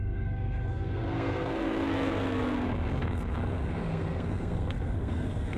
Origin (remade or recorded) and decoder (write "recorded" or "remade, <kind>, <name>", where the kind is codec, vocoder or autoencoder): remade, codec, SNAC